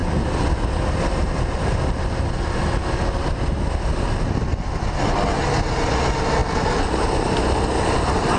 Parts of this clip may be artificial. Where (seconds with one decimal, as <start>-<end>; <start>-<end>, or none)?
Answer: none